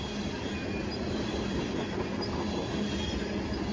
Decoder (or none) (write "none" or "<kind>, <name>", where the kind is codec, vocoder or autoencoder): none